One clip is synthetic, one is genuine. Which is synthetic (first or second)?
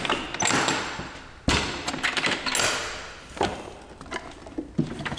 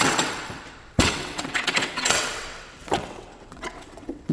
second